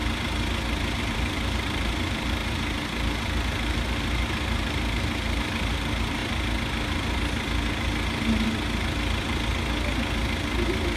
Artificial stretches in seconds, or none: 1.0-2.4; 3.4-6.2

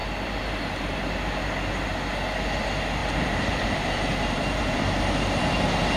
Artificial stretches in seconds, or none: 3.0-5.4

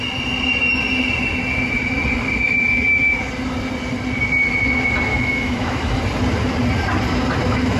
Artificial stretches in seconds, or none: 5.1-6.0

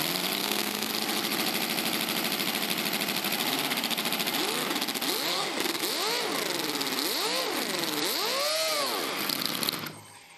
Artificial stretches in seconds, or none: 0.4-0.9; 5.3-5.8

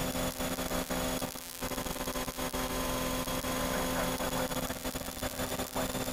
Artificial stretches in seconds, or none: none

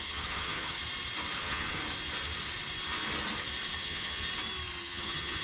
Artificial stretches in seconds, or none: 0.0-0.8; 1.4-1.8; 3.8-4.2; 4.8-5.4

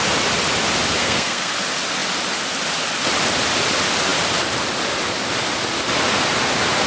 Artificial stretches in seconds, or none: 1.0-1.5

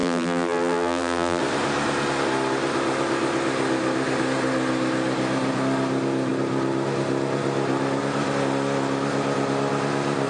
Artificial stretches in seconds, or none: 0.0-1.4